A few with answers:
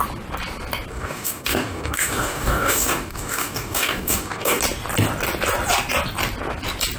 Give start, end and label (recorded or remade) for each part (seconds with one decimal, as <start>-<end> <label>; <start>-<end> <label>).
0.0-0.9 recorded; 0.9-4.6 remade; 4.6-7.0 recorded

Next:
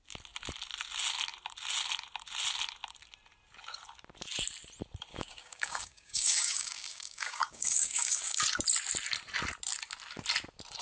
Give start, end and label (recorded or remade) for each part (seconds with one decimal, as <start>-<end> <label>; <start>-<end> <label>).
0.0-5.1 recorded; 5.1-8.4 remade; 8.4-10.8 recorded

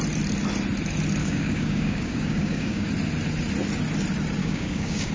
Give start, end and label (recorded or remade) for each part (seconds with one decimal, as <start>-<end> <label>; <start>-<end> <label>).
0.0-1.2 recorded; 1.2-2.9 remade; 2.9-4.4 recorded; 4.4-5.1 remade

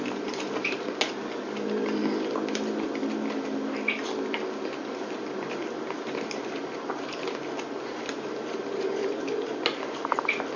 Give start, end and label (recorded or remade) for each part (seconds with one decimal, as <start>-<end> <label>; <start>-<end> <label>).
0.0-10.6 recorded

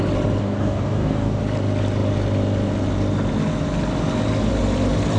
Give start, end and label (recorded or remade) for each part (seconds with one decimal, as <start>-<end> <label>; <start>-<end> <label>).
0.0-0.4 recorded; 0.4-1.4 remade; 1.4-5.2 recorded

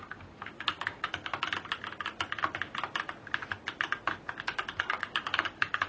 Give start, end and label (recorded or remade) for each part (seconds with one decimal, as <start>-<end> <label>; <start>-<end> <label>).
0.0-1.3 remade; 1.3-4.8 recorded; 4.8-5.9 remade

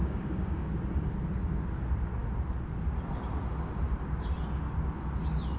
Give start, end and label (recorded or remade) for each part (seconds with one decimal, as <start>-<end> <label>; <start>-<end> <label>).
0.0-0.7 remade; 0.7-5.6 recorded

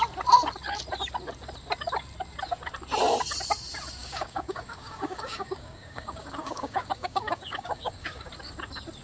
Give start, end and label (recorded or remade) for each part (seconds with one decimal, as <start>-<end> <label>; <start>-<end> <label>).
0.0-4.0 recorded; 4.0-8.3 remade; 8.3-9.0 recorded